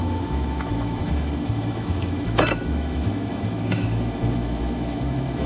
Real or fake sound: fake